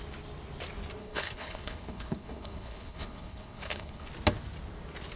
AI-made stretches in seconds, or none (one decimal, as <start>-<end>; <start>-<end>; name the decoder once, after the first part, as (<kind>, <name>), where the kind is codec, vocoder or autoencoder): 1.0-4.1 (codec, HILCodec)